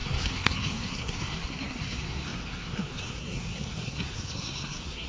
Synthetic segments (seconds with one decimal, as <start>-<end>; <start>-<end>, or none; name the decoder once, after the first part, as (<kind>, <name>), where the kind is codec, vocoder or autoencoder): 0.0-5.1 (codec, SNAC)